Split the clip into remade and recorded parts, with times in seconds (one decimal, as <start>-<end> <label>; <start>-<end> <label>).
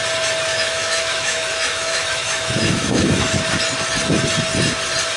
0.0-0.5 recorded; 0.5-3.4 remade; 3.4-5.2 recorded